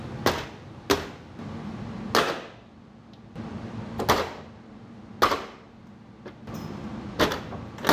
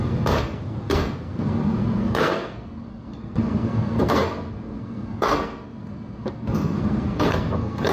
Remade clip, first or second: second